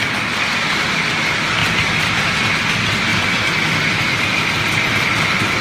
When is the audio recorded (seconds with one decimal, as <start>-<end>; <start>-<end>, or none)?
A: 0.0-1.6; 2.1-3.1; 4.5-5.6